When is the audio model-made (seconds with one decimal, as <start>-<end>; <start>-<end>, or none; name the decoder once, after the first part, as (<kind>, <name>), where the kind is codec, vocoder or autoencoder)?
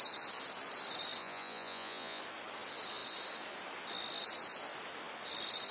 1.2-2.2 (vocoder, Vocos)